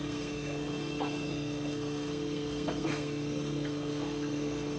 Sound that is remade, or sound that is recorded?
remade